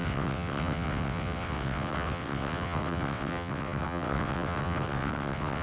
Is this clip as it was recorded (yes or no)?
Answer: no